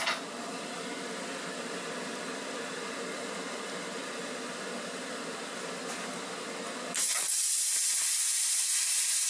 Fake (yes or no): yes